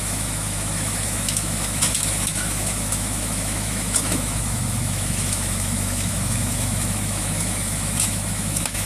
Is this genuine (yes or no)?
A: no